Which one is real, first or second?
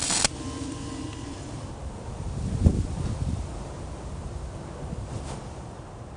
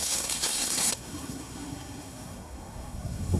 first